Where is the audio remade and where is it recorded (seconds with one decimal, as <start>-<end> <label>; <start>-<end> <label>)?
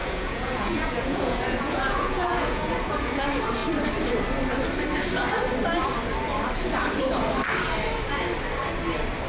0.0-3.2 remade; 3.2-9.3 recorded